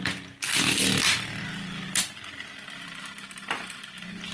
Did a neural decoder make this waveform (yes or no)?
yes